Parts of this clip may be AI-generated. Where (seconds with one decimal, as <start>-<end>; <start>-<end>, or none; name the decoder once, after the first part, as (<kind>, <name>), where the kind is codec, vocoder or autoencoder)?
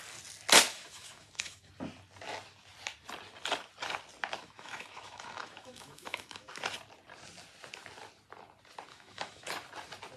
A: 0.7-1.7 (autoencoder, DAC-VAE); 4.4-6.5; 8.9-9.5